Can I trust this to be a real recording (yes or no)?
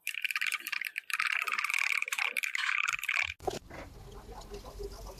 yes